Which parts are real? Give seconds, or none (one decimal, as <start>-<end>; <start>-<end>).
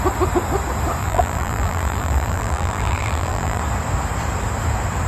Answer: 0.0-1.0; 3.6-5.1